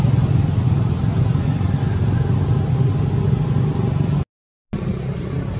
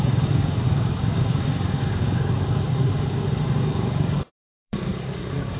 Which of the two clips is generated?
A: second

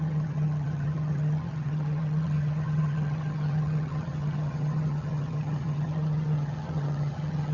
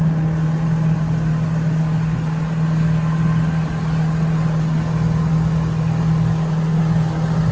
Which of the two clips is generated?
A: first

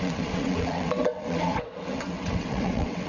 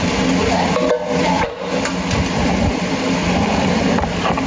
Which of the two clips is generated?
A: first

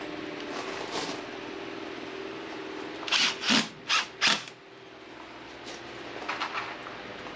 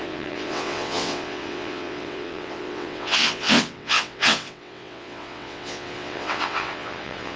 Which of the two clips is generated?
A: second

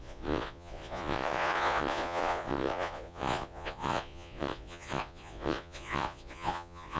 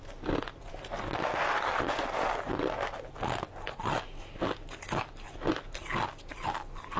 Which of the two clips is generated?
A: first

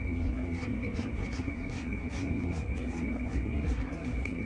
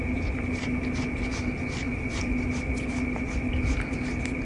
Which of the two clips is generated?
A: first